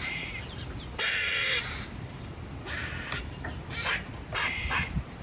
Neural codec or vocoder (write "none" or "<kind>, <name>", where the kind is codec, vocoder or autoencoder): none